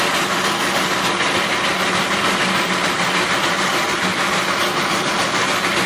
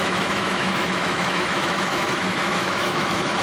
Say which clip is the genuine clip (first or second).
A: first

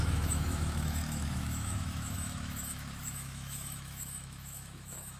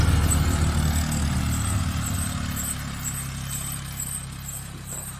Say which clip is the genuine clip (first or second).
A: second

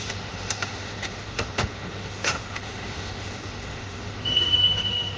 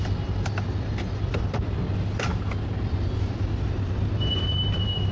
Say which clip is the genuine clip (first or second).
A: second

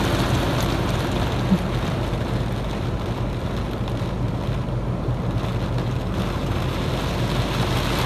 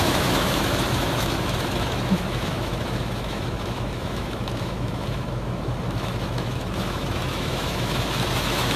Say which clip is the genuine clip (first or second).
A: first